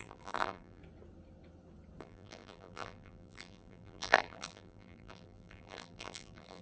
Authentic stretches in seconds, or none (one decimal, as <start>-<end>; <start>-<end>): 0.8-2.0